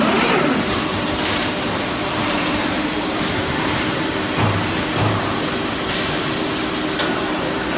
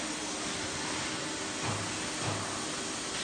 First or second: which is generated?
first